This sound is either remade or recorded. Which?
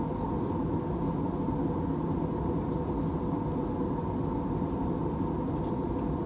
recorded